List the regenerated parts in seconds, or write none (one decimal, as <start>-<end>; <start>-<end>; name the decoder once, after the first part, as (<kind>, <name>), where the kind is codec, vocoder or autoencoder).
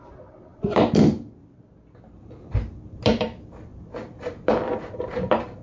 3.7-4.9 (vocoder, BigVGAN v2)